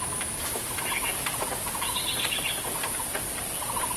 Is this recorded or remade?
recorded